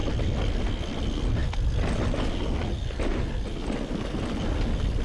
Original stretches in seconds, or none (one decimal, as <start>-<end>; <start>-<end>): 0.0-5.0